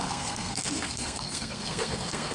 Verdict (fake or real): fake